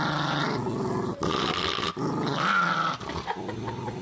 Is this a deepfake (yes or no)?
no